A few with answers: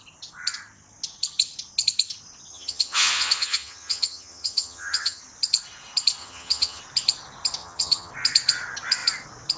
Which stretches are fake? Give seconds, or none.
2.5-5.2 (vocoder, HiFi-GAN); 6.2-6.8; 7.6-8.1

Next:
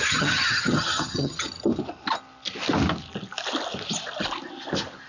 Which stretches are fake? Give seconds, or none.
0.0-1.7 (vocoder, HiFi-GAN)

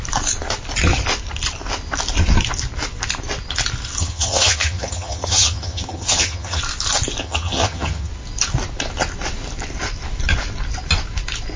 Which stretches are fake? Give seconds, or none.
4.0-6.6 (vocoder, HiFi-GAN); 7.2-8.1

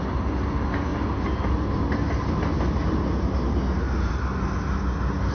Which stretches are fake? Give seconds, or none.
none

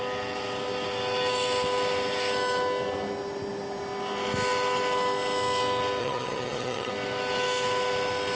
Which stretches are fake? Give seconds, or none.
6.0-6.9 (vocoder, HiFi-GAN)

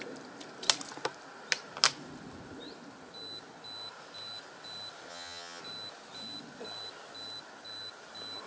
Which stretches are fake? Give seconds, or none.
5.1-5.6 (vocoder, HiFi-GAN)

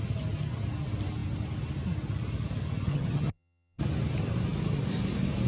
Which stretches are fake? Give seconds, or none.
2.9-3.8 (vocoder, HiFi-GAN)

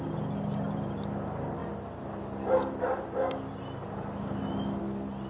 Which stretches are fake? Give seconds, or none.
none